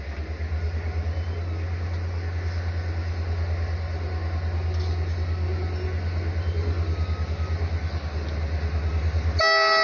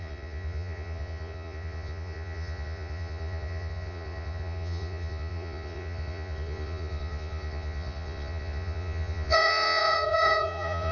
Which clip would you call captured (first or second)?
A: first